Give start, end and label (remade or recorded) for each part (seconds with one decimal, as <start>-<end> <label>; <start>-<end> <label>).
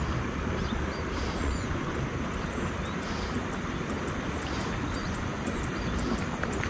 0.0-1.4 recorded; 1.4-2.0 remade; 2.0-5.0 recorded; 5.0-5.6 remade; 5.6-6.7 recorded